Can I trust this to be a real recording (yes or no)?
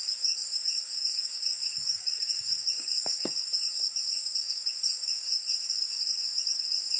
no